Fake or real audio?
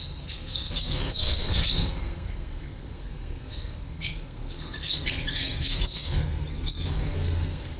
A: fake